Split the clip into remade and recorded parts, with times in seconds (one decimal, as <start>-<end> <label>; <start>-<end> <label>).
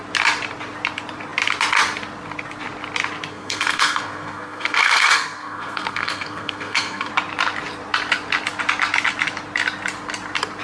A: 0.0-3.3 recorded; 3.3-7.1 remade; 7.1-10.6 recorded